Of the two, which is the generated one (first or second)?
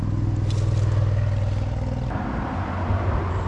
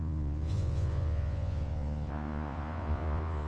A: second